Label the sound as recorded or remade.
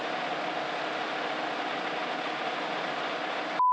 recorded